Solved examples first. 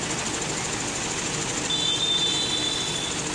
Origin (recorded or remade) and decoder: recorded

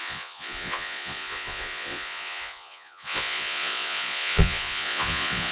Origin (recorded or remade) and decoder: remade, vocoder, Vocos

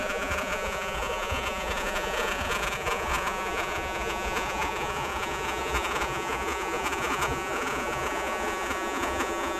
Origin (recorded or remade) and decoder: remade, vocoder, Vocos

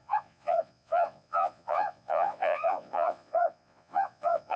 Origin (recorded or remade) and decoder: remade, vocoder, Vocos